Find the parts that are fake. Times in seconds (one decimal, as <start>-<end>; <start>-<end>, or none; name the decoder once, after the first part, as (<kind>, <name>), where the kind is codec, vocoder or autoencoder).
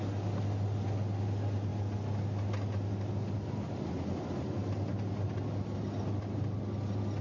none